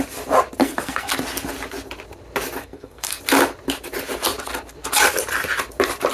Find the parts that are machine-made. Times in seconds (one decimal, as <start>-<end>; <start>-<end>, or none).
0.6-1.1; 2.6-3.2